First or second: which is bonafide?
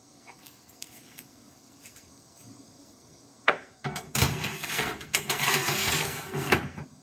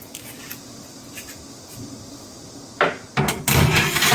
second